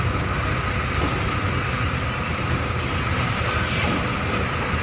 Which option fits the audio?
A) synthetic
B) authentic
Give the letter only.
B